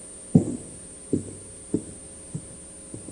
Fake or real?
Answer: real